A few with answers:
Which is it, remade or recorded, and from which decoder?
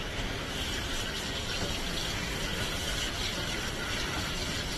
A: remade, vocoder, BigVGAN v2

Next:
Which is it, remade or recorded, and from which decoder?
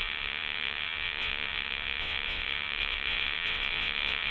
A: remade, vocoder, WaveNeXt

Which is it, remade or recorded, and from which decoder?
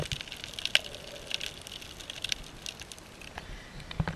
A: recorded